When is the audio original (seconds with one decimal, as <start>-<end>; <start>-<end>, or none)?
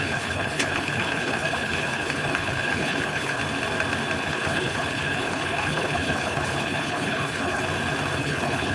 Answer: 3.4-4.2; 7.6-8.2